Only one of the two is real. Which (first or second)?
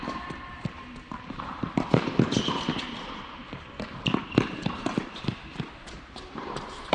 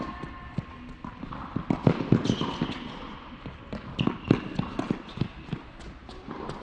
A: second